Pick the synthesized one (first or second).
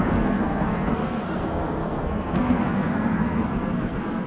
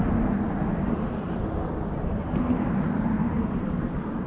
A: first